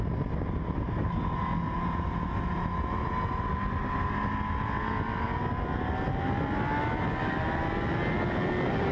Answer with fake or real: real